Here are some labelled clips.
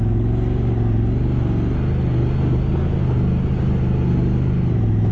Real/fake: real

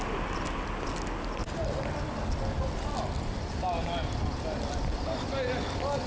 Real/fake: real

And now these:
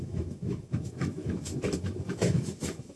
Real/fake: fake